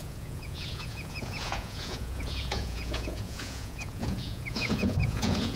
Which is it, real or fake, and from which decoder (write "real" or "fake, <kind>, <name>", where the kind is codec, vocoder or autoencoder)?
fake, vocoder, Vocos